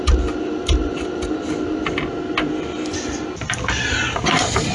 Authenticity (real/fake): real